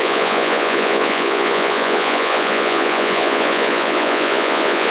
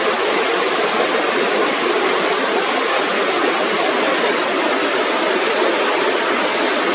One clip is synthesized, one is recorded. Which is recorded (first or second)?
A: second